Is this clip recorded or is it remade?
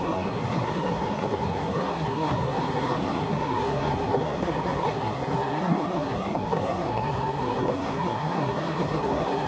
remade